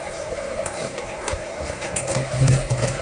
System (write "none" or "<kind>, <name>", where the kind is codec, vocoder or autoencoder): codec, SNAC